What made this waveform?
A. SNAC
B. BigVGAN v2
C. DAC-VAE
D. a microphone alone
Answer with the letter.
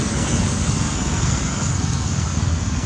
A